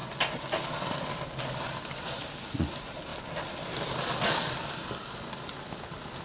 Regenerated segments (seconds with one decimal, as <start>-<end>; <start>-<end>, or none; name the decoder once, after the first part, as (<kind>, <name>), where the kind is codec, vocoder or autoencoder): none